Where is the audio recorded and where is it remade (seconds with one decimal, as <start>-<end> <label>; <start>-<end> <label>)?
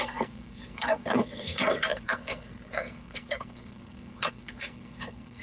0.0-5.4 remade